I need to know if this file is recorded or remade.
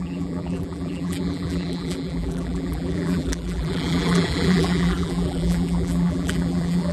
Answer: remade